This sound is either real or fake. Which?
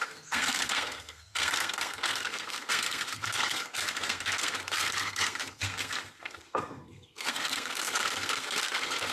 fake